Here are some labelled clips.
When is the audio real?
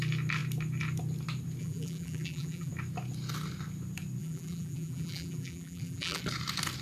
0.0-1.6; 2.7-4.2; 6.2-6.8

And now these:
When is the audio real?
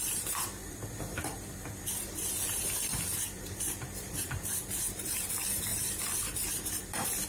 none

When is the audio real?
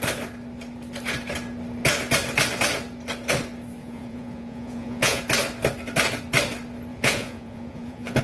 0.0-3.8; 5.2-6.9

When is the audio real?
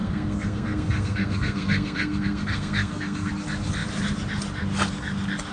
3.3-5.5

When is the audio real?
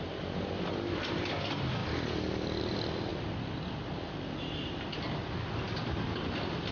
3.1-5.8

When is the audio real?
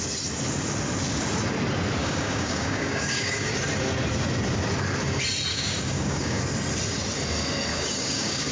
0.0-2.0; 3.5-5.5; 6.4-7.7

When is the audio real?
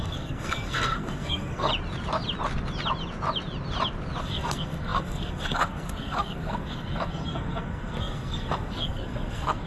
1.7-4.2